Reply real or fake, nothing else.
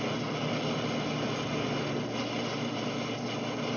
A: real